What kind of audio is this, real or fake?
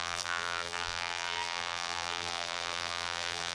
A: fake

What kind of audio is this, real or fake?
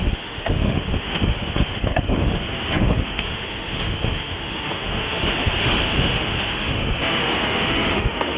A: fake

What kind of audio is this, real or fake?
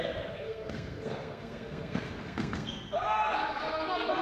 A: fake